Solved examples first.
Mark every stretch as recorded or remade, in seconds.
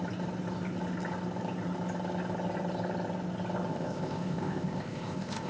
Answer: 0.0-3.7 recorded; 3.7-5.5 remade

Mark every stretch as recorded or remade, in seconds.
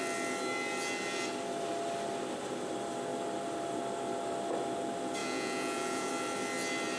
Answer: 0.0-5.2 recorded; 5.2-6.1 remade; 6.1-7.0 recorded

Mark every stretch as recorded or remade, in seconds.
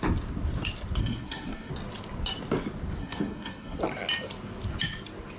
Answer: 0.0-1.0 recorded; 1.0-1.7 remade; 1.7-3.0 recorded; 3.0-3.8 remade; 3.8-5.4 recorded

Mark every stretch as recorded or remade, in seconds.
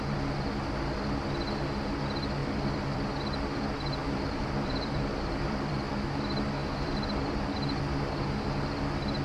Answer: 0.0-2.4 recorded; 2.4-3.6 remade; 3.6-4.0 recorded; 4.0-5.9 remade; 5.9-6.6 recorded; 6.6-7.3 remade; 7.3-9.2 recorded